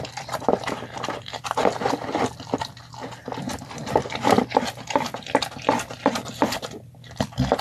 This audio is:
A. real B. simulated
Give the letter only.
A